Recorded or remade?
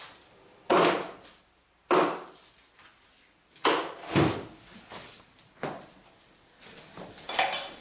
recorded